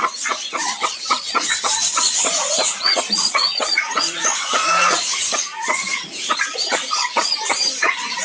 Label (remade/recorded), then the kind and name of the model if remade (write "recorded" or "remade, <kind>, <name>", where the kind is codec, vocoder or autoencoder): remade, vocoder, Vocos